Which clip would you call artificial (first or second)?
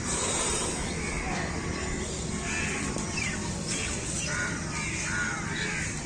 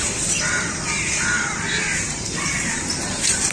second